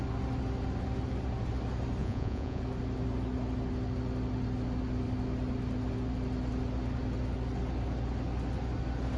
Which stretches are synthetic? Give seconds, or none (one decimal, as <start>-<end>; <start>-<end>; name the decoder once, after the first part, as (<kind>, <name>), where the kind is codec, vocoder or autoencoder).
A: 2.0-2.6 (vocoder, Vocos)